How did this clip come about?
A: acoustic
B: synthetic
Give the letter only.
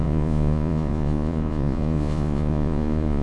B